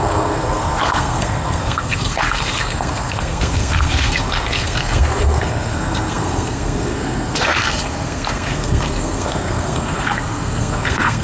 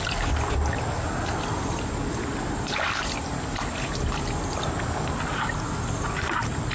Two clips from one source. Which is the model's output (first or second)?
first